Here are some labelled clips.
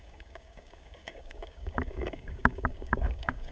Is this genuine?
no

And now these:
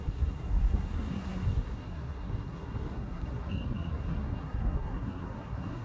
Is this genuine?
no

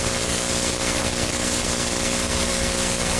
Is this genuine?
no